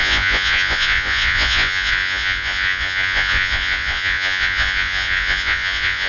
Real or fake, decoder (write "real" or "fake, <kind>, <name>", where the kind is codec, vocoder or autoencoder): fake, vocoder, Vocos